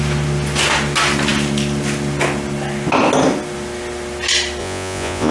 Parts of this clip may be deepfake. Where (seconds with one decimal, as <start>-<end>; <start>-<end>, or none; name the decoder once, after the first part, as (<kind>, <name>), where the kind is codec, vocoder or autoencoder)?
4.6-5.3 (vocoder, Vocos)